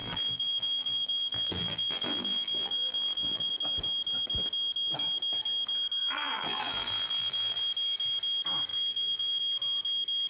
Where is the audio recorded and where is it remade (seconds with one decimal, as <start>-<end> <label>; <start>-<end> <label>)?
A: 0.0-3.5 remade; 3.5-6.0 recorded; 6.0-7.6 remade; 7.6-8.7 recorded; 8.7-9.4 remade; 9.4-10.3 recorded